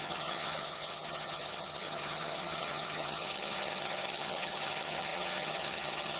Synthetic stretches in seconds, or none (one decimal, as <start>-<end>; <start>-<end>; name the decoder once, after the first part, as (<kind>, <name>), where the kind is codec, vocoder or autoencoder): 0.0-6.2 (vocoder, HiFi-GAN)